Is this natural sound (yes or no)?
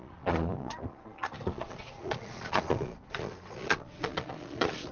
no